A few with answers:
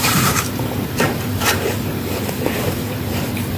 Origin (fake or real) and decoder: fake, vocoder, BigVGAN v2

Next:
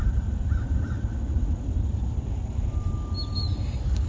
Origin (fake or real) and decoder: real